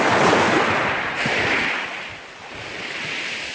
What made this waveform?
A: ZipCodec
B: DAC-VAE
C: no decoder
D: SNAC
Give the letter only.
C